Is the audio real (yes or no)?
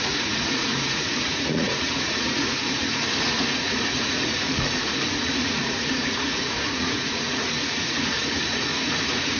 no